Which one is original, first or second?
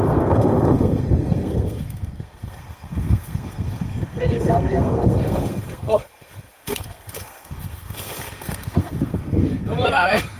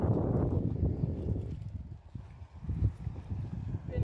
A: second